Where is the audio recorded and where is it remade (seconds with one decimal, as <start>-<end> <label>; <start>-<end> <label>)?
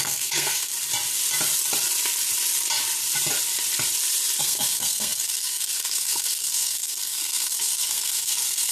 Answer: 0.0-0.7 remade; 0.7-4.4 recorded; 4.4-8.7 remade